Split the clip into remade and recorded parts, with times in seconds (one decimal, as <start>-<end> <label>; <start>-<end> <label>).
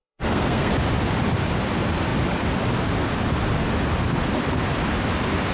0.0-0.7 remade; 0.7-5.5 recorded